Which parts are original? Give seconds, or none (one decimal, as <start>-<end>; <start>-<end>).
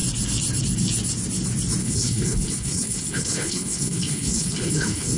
0.0-1.8